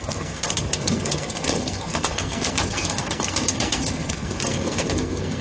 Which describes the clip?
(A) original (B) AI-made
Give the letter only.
B